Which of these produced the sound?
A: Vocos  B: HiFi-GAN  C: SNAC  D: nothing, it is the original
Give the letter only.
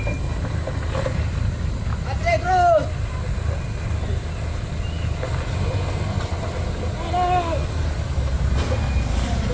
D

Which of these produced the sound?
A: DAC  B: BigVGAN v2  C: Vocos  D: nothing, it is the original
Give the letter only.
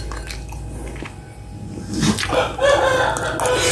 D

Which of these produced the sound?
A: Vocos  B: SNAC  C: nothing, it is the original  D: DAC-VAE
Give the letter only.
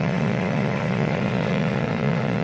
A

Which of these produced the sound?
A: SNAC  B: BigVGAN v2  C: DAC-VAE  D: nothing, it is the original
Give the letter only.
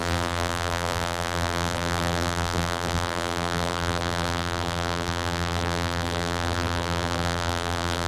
B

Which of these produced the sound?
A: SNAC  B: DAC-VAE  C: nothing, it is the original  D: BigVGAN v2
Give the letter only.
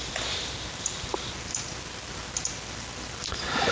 C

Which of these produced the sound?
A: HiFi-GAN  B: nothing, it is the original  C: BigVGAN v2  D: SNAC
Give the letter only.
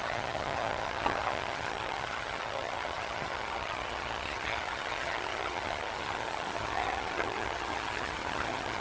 A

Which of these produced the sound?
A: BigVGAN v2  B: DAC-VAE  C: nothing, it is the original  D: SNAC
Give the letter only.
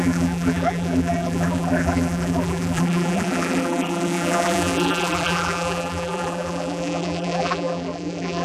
A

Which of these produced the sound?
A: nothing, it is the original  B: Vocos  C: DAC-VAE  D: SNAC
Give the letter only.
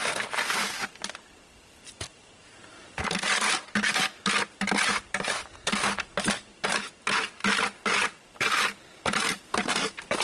A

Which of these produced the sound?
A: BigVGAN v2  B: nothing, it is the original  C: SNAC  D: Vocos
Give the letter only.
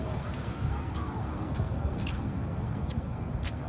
C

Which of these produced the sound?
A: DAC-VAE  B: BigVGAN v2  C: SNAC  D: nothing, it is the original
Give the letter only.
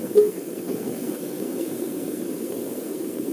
C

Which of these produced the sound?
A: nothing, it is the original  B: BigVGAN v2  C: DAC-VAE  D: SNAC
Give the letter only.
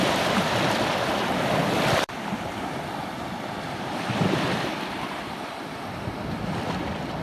B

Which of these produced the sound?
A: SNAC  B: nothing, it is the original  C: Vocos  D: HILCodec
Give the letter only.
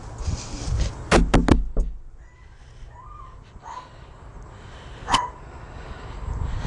B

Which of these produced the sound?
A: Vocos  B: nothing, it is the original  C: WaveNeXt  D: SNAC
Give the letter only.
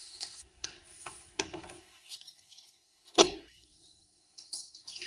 D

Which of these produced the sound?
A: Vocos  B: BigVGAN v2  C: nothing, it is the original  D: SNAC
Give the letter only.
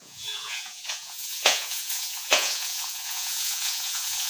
A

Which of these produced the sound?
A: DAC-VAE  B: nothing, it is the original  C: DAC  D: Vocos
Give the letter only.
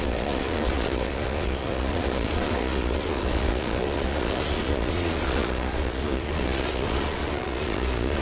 D